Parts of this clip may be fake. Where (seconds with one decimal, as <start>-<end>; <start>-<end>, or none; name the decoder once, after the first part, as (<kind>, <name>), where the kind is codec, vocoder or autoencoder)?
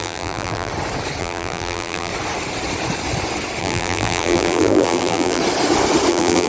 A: 0.0-0.7 (vocoder, BigVGAN v2); 1.2-2.1; 3.6-5.4; 6.1-6.5